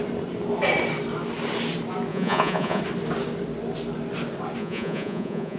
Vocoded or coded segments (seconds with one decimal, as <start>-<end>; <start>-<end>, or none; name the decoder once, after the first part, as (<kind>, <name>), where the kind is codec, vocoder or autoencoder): 2.1-2.8 (vocoder, Vocos); 4.6-5.6